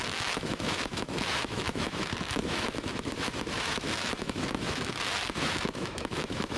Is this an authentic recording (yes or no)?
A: no